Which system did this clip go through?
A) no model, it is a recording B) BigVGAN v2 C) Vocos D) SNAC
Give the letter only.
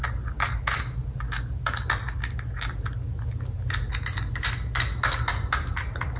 A